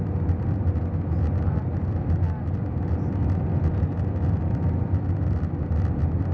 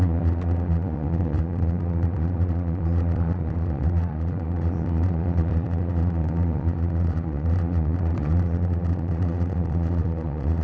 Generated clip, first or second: second